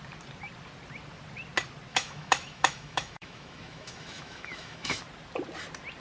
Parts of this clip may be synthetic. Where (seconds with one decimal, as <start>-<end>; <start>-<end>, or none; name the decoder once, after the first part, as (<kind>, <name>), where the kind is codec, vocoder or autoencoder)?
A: 1.9-5.0 (autoencoder, DAC-VAE)